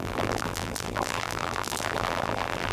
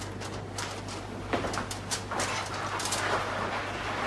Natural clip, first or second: second